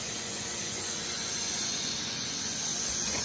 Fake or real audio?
fake